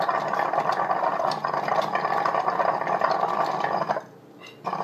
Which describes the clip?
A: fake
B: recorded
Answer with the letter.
B